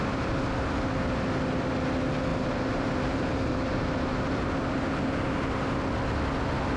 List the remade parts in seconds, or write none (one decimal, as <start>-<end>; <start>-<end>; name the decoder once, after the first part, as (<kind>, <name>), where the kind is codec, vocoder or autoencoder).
2.3-4.5 (vocoder, BigVGAN v2)